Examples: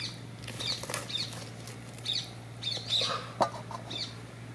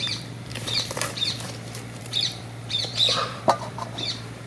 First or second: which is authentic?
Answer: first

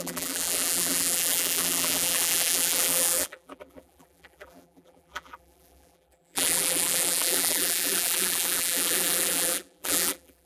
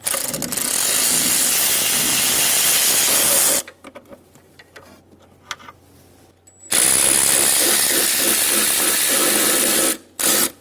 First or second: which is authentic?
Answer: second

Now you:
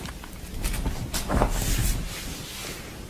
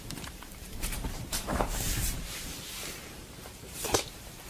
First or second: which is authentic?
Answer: first